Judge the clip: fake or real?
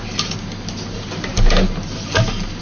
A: real